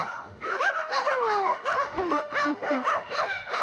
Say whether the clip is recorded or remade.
remade